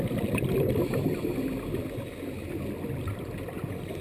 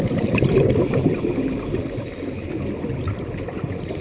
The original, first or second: first